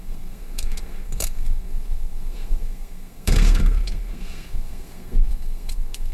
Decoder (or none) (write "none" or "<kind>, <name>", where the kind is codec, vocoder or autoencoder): codec, SNAC